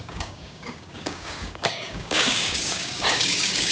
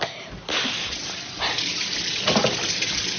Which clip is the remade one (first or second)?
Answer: first